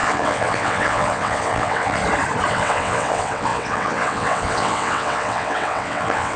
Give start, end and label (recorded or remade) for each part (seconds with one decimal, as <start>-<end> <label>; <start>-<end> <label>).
0.0-2.0 remade; 2.0-2.5 recorded; 2.5-6.4 remade